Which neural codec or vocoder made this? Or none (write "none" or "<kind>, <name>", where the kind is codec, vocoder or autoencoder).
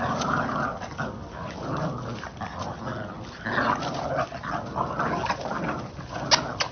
none